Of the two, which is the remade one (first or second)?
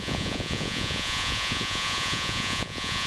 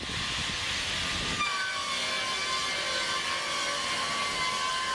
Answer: first